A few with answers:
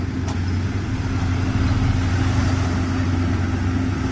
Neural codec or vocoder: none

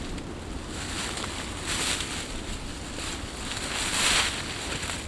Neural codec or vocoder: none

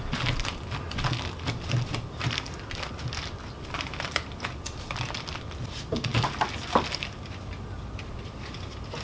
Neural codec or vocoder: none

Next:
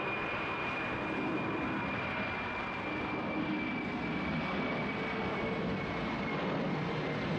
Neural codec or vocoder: none